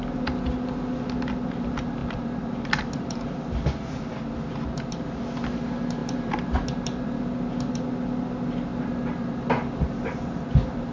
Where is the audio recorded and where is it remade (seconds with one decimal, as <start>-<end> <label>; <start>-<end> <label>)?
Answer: 0.0-2.0 recorded; 2.0-4.2 remade; 4.2-6.0 recorded; 6.0-7.2 remade; 7.2-8.7 recorded; 8.7-10.1 remade; 10.1-10.9 recorded

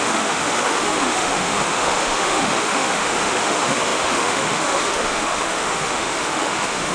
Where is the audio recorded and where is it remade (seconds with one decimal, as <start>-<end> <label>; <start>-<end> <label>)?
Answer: 0.0-6.9 remade

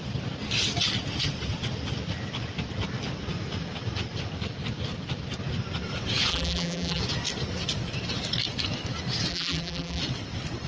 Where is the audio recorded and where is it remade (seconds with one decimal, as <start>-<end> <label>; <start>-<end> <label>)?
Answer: 0.0-6.3 recorded; 6.3-7.0 remade; 7.0-9.3 recorded; 9.3-10.0 remade; 10.0-10.7 recorded